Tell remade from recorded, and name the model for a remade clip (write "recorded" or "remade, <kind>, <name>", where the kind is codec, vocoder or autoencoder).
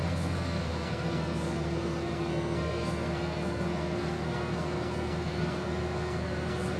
remade, codec, SNAC